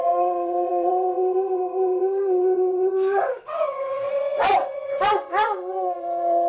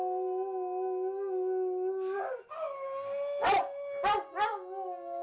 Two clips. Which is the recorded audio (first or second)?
second